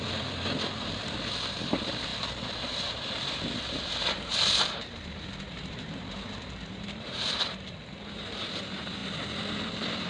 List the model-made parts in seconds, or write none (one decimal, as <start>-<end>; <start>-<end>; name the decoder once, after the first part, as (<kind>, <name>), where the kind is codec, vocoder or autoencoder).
0.0-9.0 (vocoder, BigVGAN v2); 9.7-10.1